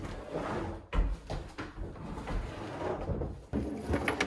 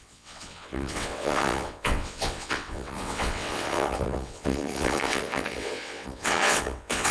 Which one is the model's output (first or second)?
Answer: second